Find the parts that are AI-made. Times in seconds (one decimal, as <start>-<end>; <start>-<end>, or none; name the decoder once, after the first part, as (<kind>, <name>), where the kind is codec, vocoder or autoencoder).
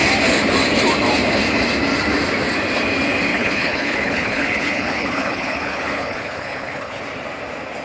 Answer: 3.3-7.0 (codec, HILCodec)